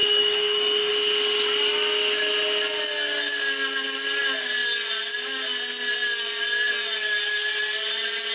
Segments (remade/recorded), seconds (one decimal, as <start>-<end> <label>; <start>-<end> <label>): 0.0-0.9 remade; 0.9-8.3 recorded